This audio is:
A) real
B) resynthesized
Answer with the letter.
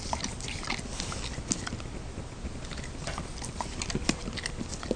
A